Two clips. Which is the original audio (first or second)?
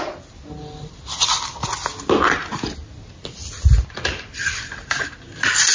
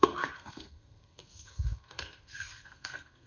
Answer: first